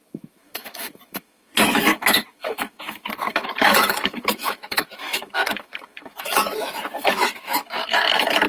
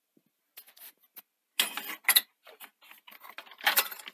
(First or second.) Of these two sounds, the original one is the second